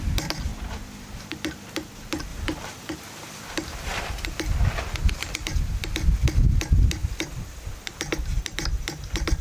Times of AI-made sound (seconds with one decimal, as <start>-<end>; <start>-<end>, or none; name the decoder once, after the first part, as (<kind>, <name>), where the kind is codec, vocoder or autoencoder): 2.3-2.9 (vocoder, BigVGAN v2)